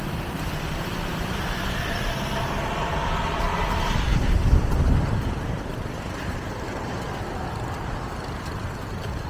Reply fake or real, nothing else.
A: fake